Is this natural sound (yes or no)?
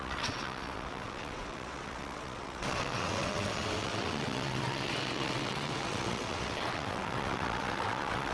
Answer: no